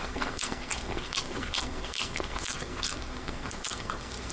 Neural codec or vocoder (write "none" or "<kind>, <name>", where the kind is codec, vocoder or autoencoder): codec, SNAC